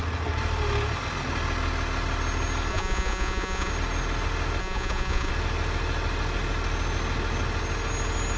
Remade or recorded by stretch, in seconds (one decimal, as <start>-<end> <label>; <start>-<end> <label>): 0.0-2.7 recorded; 2.7-3.7 remade; 3.7-4.6 recorded; 4.6-5.3 remade; 5.3-8.4 recorded